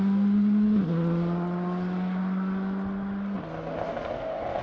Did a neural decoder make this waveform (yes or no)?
no